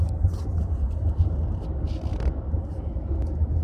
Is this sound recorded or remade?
recorded